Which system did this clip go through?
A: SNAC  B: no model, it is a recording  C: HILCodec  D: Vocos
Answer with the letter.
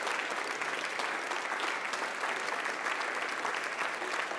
B